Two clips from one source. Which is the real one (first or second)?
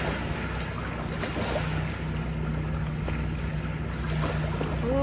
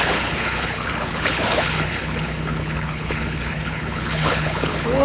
first